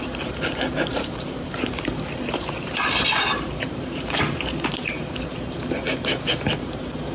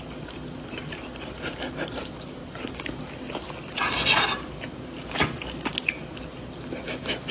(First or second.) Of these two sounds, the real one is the second